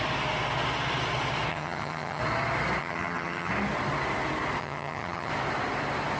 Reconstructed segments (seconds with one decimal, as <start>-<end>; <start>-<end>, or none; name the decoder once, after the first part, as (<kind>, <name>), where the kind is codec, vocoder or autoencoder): 1.5-2.2 (vocoder, HiFi-GAN); 2.8-3.5; 4.6-5.3